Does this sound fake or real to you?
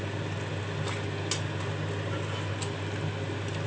real